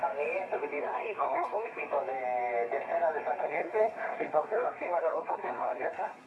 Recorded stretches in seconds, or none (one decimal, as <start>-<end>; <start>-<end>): 0.0-0.8; 1.8-3.4